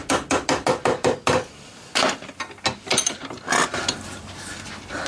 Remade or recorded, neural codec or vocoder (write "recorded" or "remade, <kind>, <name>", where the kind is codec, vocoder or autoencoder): recorded